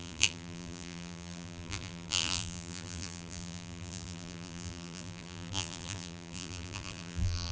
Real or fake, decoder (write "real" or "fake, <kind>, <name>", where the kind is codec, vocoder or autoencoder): fake, vocoder, BigVGAN v2